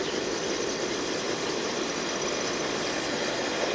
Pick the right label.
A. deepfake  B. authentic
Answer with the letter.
B